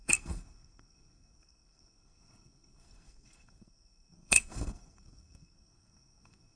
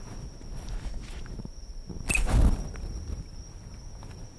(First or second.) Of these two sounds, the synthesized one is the first